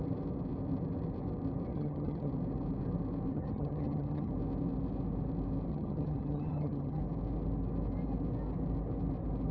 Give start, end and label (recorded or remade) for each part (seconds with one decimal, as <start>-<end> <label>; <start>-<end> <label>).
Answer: 0.0-1.7 recorded; 1.7-2.3 remade; 2.3-3.3 recorded; 3.3-4.3 remade; 4.3-5.7 recorded; 5.7-7.0 remade; 7.0-9.5 recorded